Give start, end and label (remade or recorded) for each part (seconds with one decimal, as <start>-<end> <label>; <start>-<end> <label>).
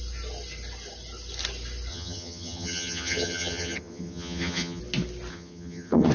0.0-1.9 recorded; 1.9-4.8 remade; 4.8-5.3 recorded; 5.3-6.1 remade